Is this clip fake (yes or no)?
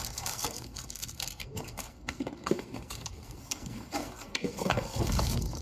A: yes